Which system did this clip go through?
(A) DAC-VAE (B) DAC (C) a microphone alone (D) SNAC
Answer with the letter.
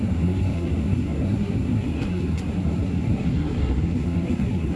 D